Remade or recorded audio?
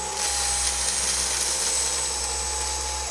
recorded